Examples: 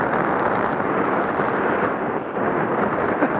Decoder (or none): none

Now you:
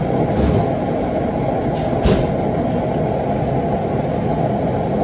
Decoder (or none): none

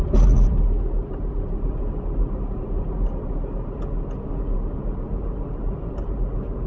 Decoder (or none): none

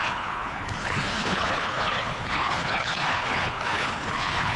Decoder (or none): codec, HILCodec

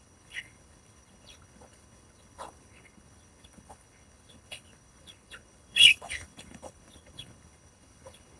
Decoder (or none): codec, HILCodec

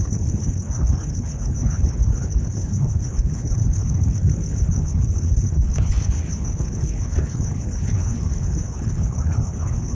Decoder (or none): codec, HILCodec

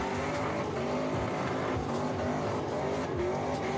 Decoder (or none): none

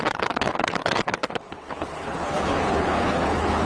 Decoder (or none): codec, HILCodec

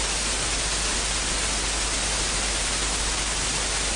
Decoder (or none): none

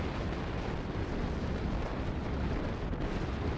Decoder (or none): none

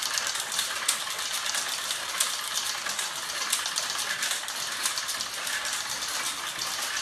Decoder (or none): none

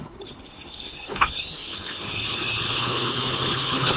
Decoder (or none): codec, HILCodec